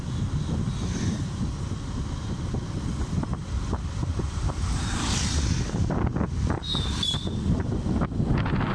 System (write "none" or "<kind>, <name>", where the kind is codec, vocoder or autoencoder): none